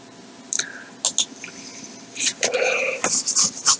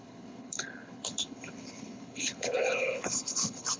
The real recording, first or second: first